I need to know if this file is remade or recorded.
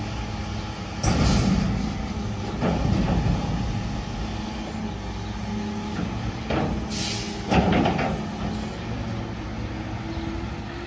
recorded